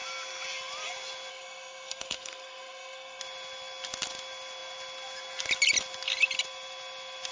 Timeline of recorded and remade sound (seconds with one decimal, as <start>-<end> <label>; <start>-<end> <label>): 0.0-1.3 recorded; 1.3-3.2 remade; 3.2-7.3 recorded